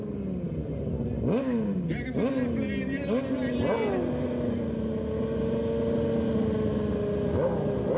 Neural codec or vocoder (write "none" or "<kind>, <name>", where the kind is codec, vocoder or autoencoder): none